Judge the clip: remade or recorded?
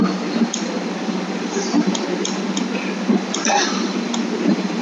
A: recorded